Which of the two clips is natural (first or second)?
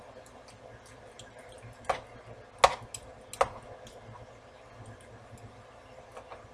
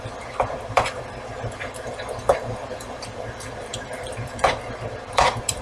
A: first